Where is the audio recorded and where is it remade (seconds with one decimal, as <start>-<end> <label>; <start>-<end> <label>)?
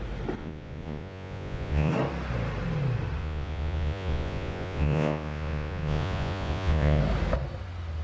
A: 0.0-0.4 recorded; 0.4-1.9 remade; 1.9-3.2 recorded; 3.2-7.0 remade; 7.0-8.0 recorded